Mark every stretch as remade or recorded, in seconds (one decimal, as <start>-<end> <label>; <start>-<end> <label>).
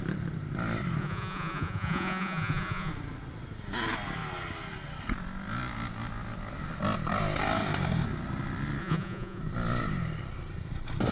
0.0-1.0 recorded; 1.0-2.9 remade; 2.9-8.8 recorded; 8.8-9.4 remade; 9.4-11.1 recorded